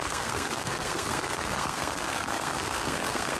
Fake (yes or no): yes